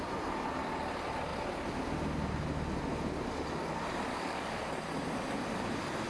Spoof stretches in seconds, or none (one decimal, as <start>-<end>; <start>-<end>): 4.1-4.6